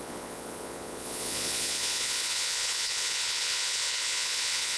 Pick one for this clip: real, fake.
fake